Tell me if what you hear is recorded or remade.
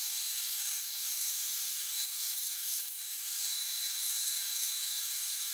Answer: remade